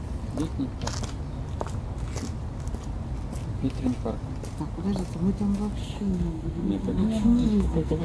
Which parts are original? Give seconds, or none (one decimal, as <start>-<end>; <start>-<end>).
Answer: 0.0-5.8